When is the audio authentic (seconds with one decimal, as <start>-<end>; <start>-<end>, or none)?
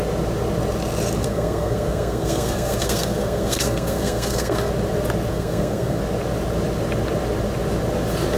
0.0-1.2; 4.7-5.3; 6.0-8.4